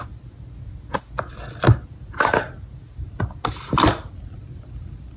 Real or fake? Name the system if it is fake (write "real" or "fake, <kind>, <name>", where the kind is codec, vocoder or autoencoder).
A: real